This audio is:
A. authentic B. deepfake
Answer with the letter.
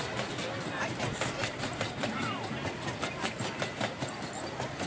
A